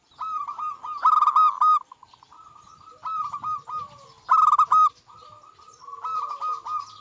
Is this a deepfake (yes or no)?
no